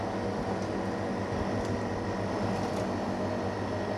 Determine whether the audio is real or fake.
real